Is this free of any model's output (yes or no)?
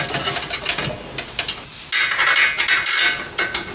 yes